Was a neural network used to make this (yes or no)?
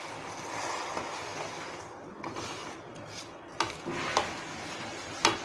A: no